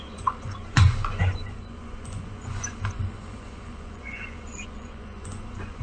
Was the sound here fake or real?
fake